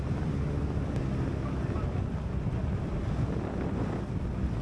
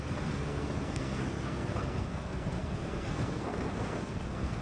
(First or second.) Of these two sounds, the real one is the first